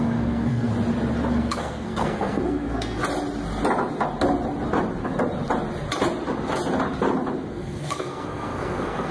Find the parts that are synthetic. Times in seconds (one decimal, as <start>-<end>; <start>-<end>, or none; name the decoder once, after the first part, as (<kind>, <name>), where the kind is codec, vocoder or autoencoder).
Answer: 0.0-0.7 (codec, SNAC); 1.3-3.0; 7.5-9.1